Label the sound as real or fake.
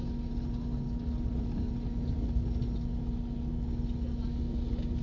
real